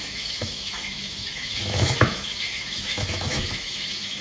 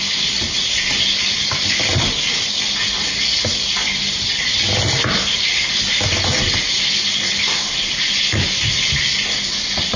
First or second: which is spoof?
first